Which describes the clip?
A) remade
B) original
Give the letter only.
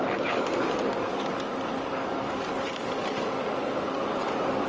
A